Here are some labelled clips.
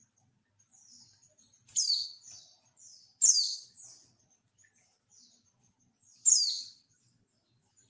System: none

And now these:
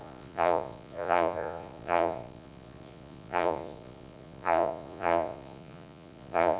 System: vocoder, Vocos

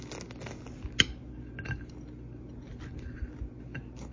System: none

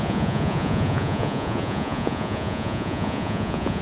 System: vocoder, Vocos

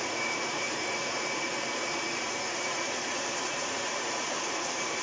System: vocoder, Vocos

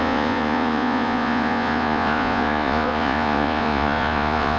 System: vocoder, Vocos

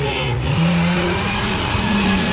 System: vocoder, Vocos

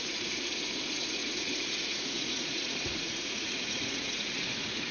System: vocoder, Vocos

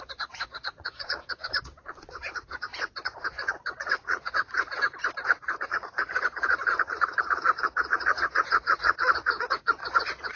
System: vocoder, Vocos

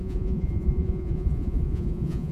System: vocoder, Vocos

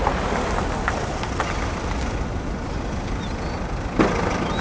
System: none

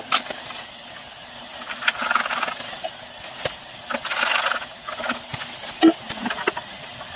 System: none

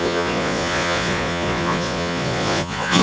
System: vocoder, Vocos